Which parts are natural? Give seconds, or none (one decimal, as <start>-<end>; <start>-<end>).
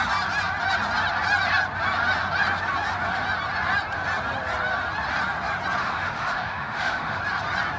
0.0-5.8; 7.2-7.8